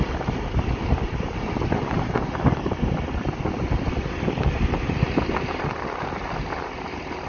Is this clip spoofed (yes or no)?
no